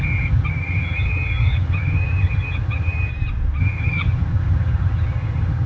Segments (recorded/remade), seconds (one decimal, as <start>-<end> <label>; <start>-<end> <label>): 0.0-3.1 remade; 3.1-3.6 recorded; 3.6-5.7 remade